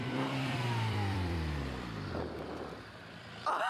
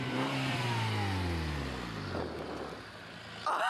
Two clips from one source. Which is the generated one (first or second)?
first